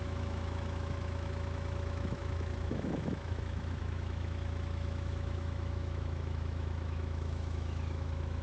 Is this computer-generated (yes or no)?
yes